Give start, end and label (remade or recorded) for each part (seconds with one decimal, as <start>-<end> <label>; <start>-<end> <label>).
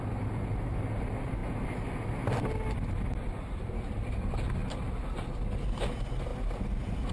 0.0-1.4 remade; 1.4-3.3 recorded; 3.3-4.6 remade; 4.6-5.7 recorded; 5.7-6.3 remade; 6.3-7.1 recorded